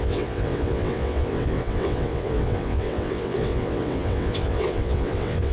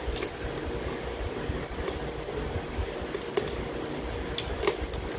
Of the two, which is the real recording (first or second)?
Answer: second